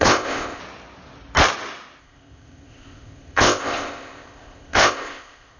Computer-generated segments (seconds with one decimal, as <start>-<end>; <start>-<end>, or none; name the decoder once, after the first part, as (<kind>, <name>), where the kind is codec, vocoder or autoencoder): 0.0-0.6 (codec, ZipCodec); 2.0-5.6